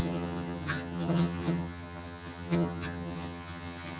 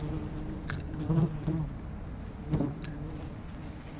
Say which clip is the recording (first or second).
second